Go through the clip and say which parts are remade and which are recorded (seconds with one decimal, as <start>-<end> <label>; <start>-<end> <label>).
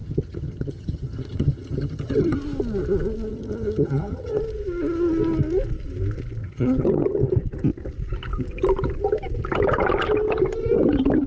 0.0-2.4 remade; 2.4-3.3 recorded; 3.3-4.4 remade; 4.4-6.4 recorded; 6.4-7.3 remade; 7.3-11.3 recorded